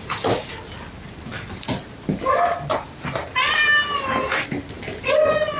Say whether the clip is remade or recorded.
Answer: recorded